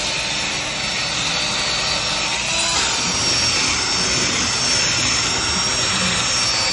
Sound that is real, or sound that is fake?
real